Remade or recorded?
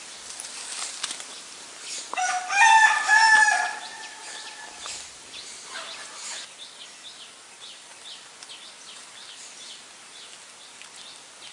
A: recorded